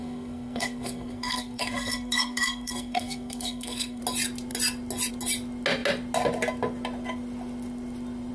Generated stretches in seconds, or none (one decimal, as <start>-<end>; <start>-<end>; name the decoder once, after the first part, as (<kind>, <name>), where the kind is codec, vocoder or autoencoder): 0.0-4.0 (codec, SNAC)